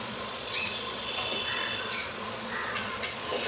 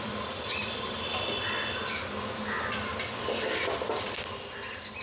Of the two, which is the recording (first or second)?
second